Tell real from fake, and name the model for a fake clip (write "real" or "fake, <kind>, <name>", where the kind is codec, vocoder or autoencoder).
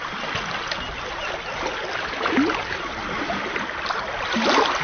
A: real